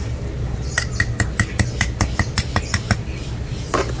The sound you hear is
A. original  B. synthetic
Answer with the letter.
A